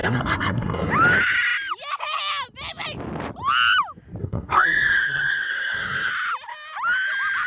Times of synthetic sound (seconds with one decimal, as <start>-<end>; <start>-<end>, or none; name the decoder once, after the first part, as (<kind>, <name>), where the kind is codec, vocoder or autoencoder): 0.0-0.9 (codec, SNAC); 4.2-6.1